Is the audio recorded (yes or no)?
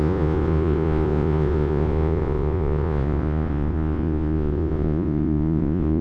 no